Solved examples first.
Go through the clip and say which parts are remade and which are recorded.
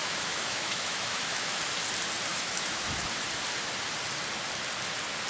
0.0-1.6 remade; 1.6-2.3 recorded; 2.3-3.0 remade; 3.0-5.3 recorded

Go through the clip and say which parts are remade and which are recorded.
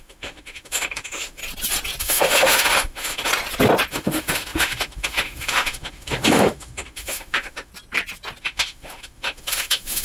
0.0-1.4 remade; 1.4-2.0 recorded; 2.0-3.3 remade; 3.3-3.9 recorded; 3.9-7.7 remade; 7.7-8.4 recorded; 8.4-10.0 remade